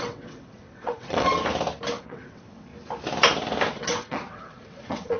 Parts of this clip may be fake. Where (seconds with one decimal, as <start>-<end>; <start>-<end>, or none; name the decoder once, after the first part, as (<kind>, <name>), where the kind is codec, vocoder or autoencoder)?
0.0-1.4 (vocoder, WaveNeXt); 2.0-2.7; 3.7-5.2